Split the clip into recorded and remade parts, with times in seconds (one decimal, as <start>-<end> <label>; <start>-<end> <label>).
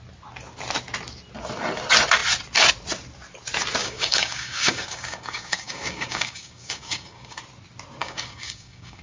0.0-3.8 recorded; 3.8-7.4 remade; 7.4-8.0 recorded; 8.0-9.0 remade